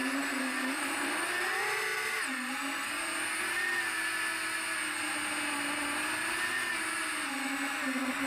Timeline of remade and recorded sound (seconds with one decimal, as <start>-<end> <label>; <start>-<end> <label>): 0.0-1.2 remade; 1.2-8.3 recorded

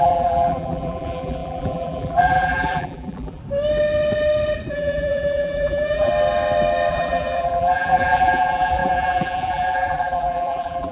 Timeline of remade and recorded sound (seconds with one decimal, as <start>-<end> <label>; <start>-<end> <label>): 0.0-3.4 remade; 3.4-4.7 recorded; 4.7-6.1 remade; 6.1-6.9 recorded; 6.9-10.9 remade